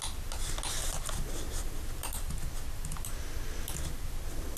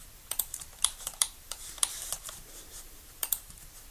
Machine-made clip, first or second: second